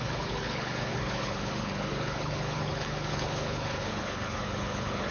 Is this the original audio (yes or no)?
no